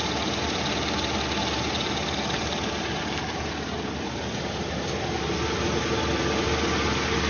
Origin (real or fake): real